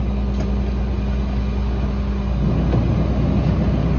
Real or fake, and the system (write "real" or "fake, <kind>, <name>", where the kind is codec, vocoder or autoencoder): real